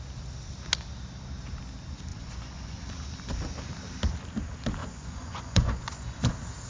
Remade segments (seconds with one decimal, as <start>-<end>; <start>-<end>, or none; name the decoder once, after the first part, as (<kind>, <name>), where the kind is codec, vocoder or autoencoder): 2.1-2.8 (vocoder, Vocos); 4.8-6.3